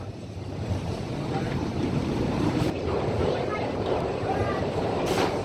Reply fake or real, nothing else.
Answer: fake